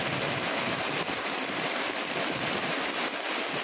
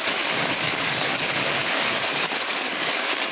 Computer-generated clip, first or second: second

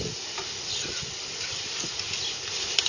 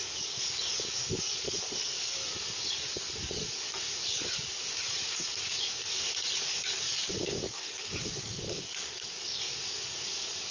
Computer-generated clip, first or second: second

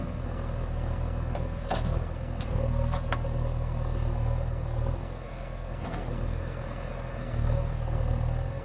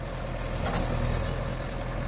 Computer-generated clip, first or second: first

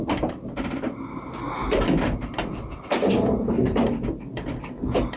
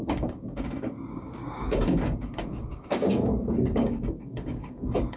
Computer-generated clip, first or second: second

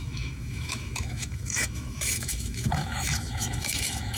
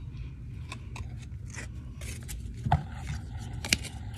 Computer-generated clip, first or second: first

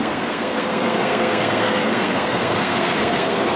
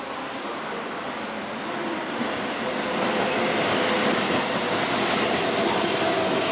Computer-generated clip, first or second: first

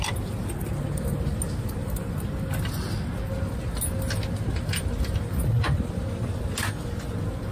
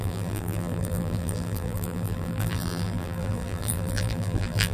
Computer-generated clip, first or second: second